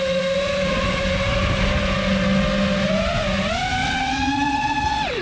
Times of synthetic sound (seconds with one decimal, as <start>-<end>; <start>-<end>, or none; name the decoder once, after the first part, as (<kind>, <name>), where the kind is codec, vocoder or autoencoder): 3.8-5.2 (vocoder, WaveNeXt)